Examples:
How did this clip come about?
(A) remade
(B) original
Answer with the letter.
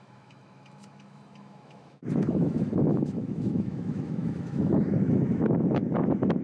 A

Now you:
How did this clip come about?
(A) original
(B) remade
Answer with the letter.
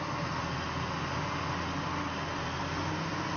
A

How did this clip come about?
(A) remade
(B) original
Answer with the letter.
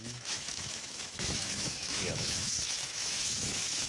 A